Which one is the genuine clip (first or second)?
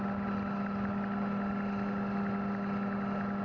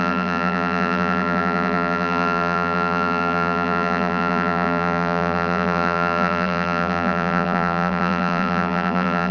first